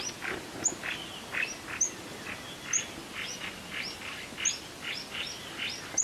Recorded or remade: recorded